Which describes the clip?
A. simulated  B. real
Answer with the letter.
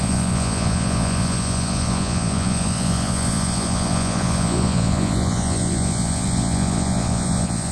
A